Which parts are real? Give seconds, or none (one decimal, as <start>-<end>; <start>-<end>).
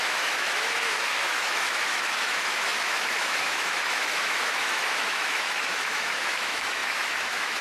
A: none